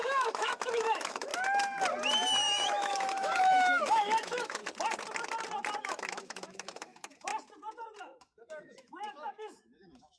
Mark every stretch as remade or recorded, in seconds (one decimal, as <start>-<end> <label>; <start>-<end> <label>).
0.0-1.3 remade; 1.3-2.3 recorded; 2.3-4.6 remade; 4.6-5.8 recorded; 5.8-7.3 remade; 7.3-8.0 recorded; 8.0-10.2 remade